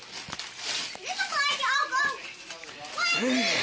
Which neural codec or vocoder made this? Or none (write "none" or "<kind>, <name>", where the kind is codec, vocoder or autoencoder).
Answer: none